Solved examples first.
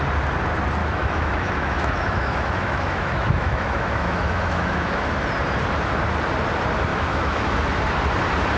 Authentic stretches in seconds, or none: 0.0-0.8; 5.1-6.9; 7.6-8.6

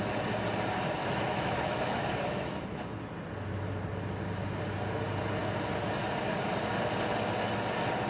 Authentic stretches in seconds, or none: 0.0-1.0; 2.8-8.1

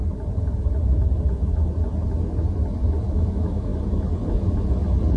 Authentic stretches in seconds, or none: 0.0-3.1; 3.7-5.2

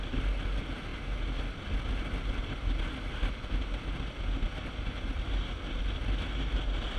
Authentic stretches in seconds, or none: 0.0-7.0

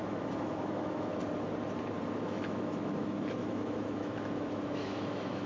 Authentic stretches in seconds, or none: 1.1-2.2

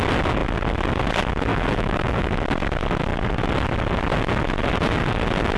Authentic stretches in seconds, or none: 0.0-1.5; 2.3-5.6

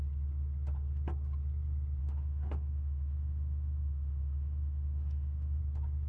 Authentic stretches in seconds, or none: 0.0-2.0; 5.6-6.1

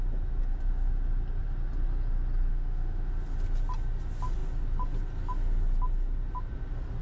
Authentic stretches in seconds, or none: 0.0-2.5; 3.1-7.0